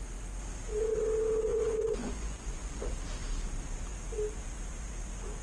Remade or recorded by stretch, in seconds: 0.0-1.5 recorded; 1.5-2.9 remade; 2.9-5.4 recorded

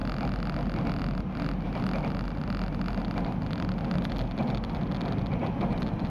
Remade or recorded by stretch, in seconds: 0.0-6.1 recorded